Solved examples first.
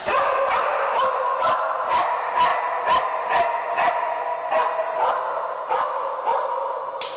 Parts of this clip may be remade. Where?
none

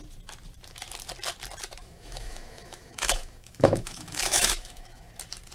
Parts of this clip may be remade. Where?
1.8-5.1 (autoencoder, DAC-VAE)

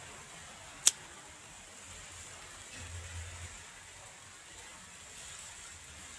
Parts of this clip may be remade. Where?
none

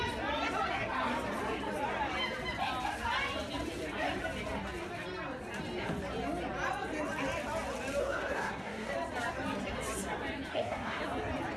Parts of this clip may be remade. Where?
8.0-8.9 (codec, SNAC); 10.5-11.0

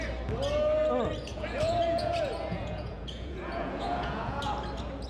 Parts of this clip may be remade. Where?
1.3-4.4 (vocoder, Vocos)